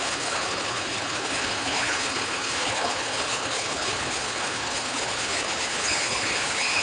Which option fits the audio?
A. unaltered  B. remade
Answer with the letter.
B